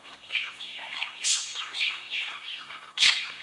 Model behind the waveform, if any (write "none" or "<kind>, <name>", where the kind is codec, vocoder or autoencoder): codec, SNAC